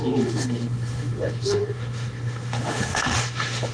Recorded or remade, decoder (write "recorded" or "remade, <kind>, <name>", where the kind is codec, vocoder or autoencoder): remade, autoencoder, DAC-VAE